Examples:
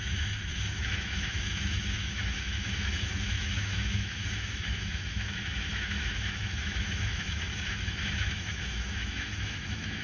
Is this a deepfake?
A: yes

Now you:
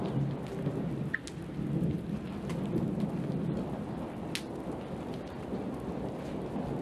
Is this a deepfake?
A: no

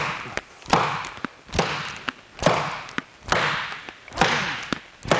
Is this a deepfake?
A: no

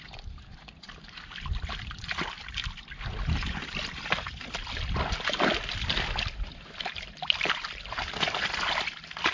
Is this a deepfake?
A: no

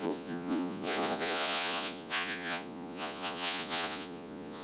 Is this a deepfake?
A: yes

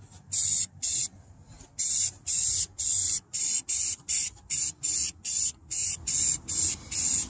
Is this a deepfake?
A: no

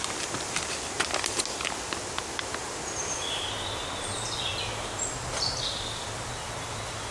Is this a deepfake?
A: no